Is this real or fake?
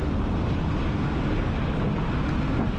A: real